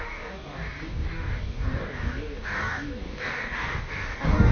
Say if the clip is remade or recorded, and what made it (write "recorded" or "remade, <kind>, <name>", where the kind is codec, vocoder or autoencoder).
remade, codec, DAC